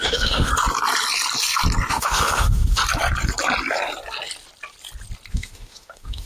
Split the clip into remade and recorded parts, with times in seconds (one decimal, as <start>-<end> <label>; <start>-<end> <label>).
0.0-0.5 remade; 0.5-1.9 recorded; 1.9-2.8 remade; 2.8-5.3 recorded; 5.3-6.3 remade